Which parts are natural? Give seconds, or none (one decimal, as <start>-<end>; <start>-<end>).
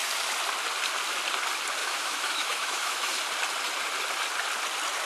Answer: 0.0-1.8; 3.1-5.1